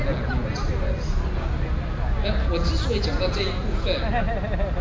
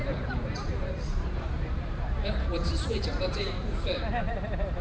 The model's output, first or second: second